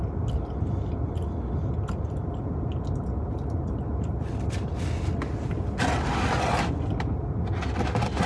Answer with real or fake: real